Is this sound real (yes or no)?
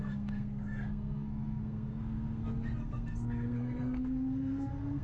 no